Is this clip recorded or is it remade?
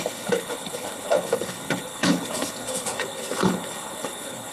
remade